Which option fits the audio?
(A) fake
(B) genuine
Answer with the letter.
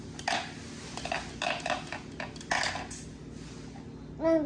B